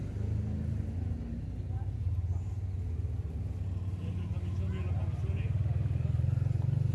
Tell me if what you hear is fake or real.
real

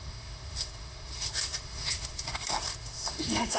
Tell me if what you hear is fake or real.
fake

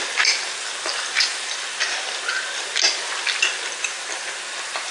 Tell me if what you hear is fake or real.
real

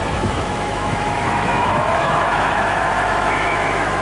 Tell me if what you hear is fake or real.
fake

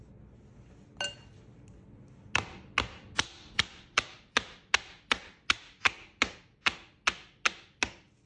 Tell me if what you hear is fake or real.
real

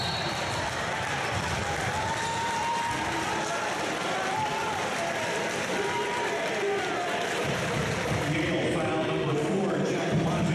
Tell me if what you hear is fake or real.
fake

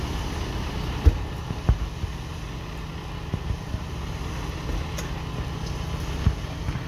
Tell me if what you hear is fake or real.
real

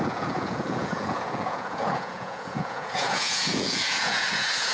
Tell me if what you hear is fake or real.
fake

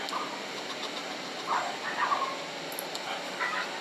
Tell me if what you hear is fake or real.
real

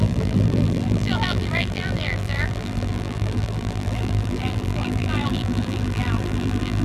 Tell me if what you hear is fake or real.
fake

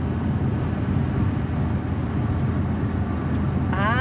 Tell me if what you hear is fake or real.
real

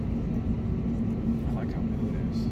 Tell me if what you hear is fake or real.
real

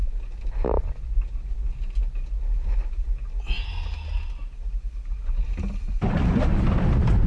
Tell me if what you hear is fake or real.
real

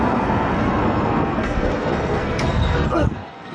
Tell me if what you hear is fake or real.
fake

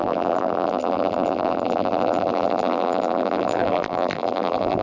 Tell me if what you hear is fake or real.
fake